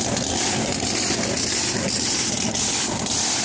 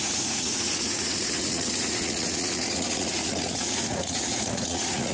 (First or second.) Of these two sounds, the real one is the first